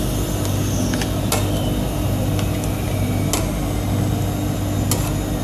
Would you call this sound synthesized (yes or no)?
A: no